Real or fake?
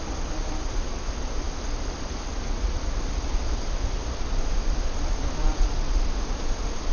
real